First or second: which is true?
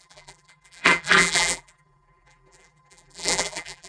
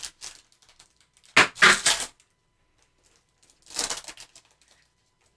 second